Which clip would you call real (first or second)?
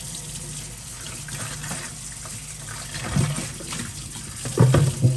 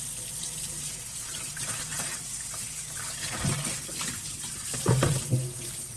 first